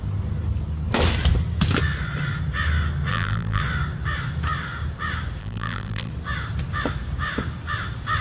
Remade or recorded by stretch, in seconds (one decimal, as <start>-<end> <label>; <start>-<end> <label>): 0.0-3.1 recorded; 3.1-3.6 remade; 3.6-5.4 recorded; 5.4-6.1 remade; 6.1-8.2 recorded